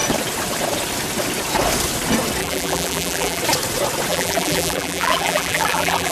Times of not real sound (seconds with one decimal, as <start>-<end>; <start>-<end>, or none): 2.4-3.4; 4.1-6.1